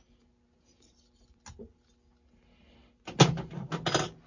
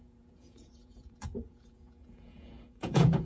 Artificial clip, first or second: second